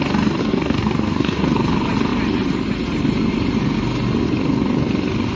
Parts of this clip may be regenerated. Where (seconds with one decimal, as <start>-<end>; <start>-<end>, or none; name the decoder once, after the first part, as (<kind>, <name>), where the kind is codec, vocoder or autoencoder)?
0.4-1.4 (codec, SNAC)